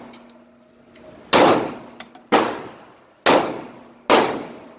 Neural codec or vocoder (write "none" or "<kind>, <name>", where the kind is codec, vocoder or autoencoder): none